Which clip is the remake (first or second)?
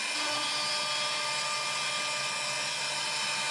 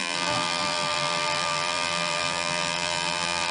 second